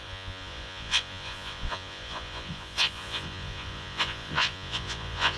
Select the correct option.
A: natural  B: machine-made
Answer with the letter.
B